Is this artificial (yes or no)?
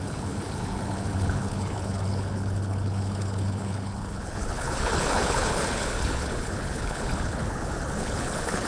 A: yes